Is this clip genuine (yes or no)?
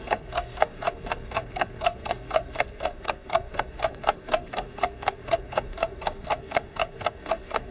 no